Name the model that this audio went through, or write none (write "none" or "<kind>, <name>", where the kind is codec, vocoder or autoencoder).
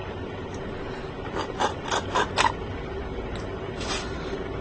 none